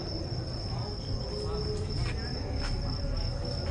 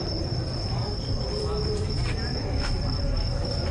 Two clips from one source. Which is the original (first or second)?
first